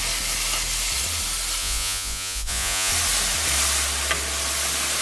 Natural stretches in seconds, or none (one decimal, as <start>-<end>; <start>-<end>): 0.0-1.6; 2.9-5.0